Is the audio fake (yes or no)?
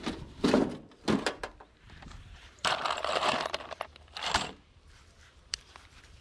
yes